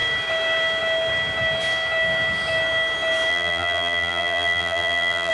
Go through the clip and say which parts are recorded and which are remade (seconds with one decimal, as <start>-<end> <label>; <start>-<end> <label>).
0.0-3.3 recorded; 3.3-5.3 remade